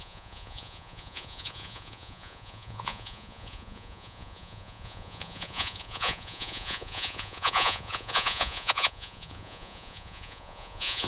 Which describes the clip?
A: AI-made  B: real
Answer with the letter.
A